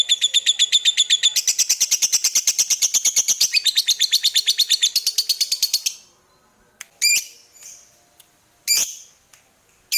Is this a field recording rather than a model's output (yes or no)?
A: yes